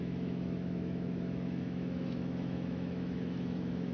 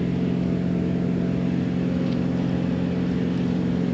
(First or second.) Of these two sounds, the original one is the second